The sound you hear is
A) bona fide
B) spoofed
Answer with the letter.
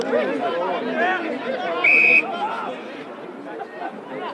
A